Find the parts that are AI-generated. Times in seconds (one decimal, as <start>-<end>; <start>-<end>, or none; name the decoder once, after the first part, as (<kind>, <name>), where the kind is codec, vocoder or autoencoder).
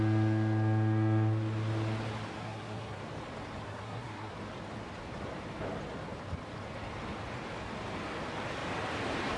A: 2.4-3.0 (codec, SNAC); 3.7-4.3